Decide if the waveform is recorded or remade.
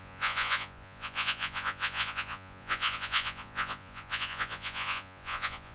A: remade